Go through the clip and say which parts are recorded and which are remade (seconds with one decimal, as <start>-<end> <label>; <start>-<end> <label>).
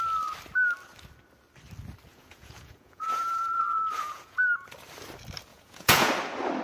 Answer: 0.0-2.1 recorded; 2.1-4.4 remade; 4.4-5.5 recorded; 5.5-6.1 remade; 6.1-6.6 recorded